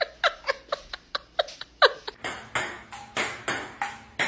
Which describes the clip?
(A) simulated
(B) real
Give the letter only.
B